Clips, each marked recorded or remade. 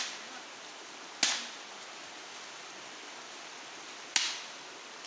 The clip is recorded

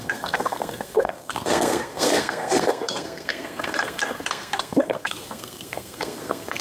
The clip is remade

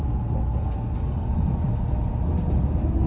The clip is recorded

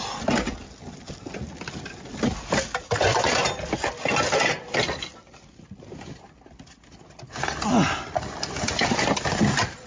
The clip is recorded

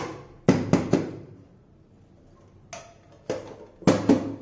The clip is recorded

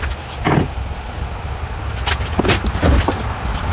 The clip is recorded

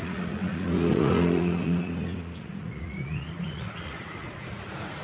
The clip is remade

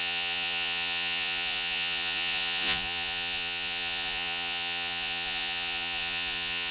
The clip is remade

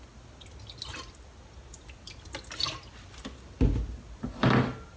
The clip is recorded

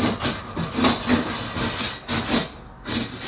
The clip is recorded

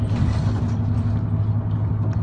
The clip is recorded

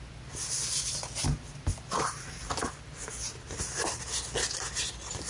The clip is recorded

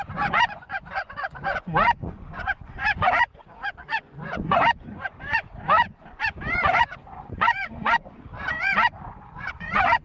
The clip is remade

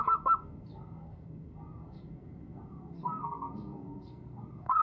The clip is remade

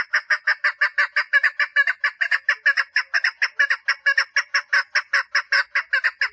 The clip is recorded